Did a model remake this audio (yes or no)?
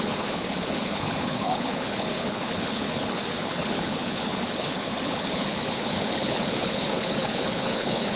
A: yes